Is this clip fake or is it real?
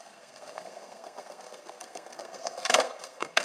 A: fake